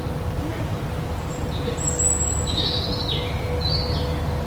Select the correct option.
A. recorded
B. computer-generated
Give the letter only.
A